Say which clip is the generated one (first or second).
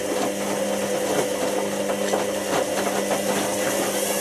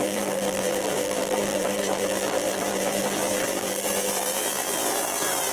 second